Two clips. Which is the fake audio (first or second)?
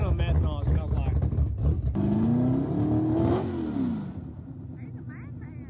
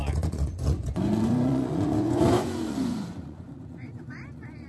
second